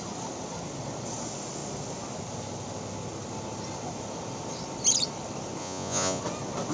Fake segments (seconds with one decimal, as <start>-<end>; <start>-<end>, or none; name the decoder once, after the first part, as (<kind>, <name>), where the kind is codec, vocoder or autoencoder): 5.6-6.2 (vocoder, Vocos)